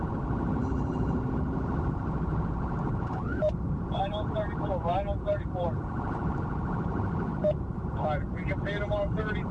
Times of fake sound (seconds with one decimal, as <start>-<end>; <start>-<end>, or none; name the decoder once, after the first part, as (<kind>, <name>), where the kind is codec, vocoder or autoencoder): 0.0-9.5 (vocoder, BigVGAN v2)